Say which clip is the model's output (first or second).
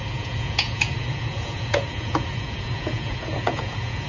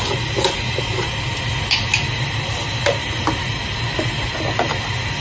first